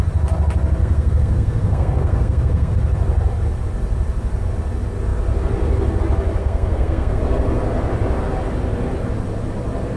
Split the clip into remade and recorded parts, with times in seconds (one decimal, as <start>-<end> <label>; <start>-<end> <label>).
0.0-0.8 recorded; 0.8-2.7 remade; 2.7-6.4 recorded; 6.4-7.2 remade; 7.2-10.0 recorded